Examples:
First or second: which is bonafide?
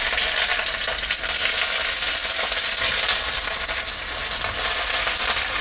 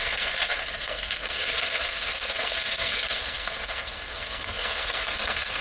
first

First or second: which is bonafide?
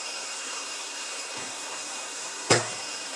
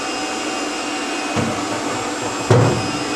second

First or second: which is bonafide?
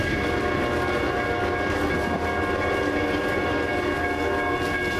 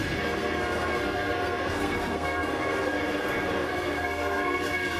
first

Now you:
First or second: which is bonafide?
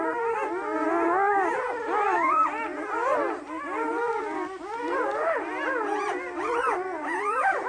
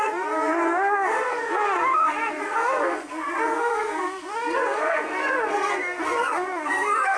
first